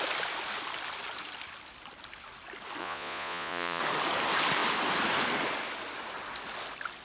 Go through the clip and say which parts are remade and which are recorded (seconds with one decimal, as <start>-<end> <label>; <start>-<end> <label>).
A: 0.0-2.8 recorded; 2.8-3.8 remade; 3.8-7.0 recorded

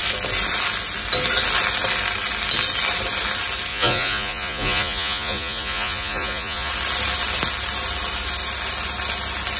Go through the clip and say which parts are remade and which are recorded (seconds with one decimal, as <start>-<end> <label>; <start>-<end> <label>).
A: 0.0-3.7 recorded; 3.7-6.7 remade; 6.7-9.6 recorded

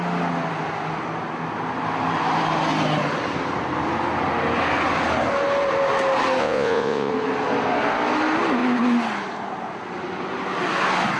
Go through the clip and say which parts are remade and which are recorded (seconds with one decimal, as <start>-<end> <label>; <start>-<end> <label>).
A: 0.0-6.4 recorded; 6.4-7.1 remade; 7.1-11.2 recorded

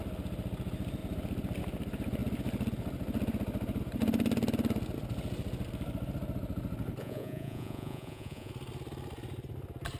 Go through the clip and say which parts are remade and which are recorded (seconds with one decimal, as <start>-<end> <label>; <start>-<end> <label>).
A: 0.0-7.0 recorded; 7.0-8.5 remade; 8.5-10.0 recorded

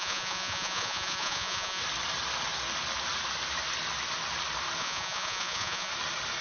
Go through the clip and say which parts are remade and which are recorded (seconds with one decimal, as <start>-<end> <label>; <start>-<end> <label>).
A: 0.0-1.8 remade; 1.8-4.8 recorded; 4.8-5.9 remade; 5.9-6.4 recorded

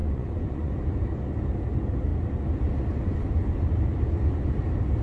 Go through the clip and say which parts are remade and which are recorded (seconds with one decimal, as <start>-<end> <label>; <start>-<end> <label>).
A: 0.0-0.7 remade; 0.7-5.0 recorded